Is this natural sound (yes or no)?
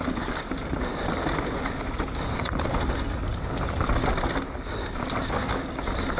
yes